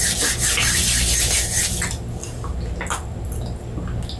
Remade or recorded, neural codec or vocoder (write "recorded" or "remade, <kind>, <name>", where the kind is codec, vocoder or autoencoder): recorded